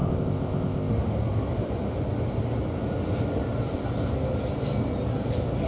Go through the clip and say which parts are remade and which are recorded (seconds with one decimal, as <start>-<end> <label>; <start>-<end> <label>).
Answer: 0.0-0.9 remade; 0.9-5.7 recorded